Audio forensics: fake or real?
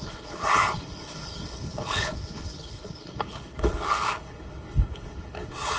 fake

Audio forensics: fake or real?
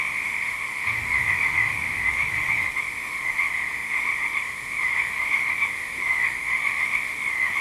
fake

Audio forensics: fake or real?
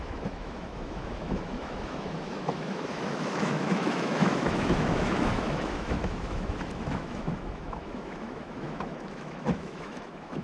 fake